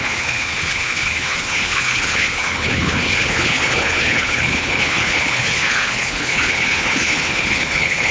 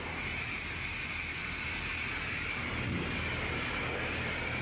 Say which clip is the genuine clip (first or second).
second